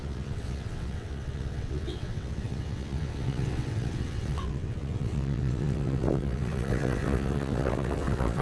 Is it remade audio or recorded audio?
remade